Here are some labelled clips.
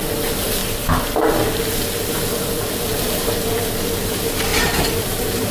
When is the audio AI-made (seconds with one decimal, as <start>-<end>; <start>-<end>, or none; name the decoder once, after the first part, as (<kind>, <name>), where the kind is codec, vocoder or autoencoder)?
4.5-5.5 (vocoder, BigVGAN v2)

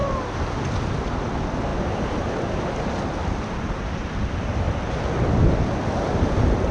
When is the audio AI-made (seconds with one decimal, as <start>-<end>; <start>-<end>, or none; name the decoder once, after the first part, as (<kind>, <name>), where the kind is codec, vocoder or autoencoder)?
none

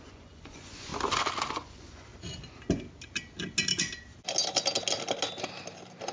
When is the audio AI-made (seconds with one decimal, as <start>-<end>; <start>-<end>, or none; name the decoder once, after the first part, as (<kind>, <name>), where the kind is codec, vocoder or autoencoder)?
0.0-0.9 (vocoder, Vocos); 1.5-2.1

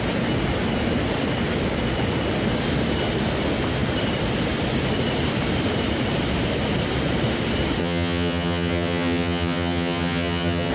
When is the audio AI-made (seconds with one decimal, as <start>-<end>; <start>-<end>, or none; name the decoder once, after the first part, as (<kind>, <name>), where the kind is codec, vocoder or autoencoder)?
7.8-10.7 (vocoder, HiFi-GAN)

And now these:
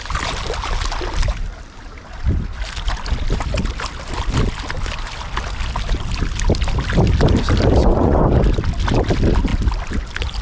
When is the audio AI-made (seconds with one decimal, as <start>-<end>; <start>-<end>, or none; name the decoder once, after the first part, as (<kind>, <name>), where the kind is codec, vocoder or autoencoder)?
7.8-8.4 (vocoder, Vocos)